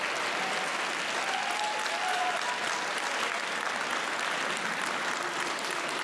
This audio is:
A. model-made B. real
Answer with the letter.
B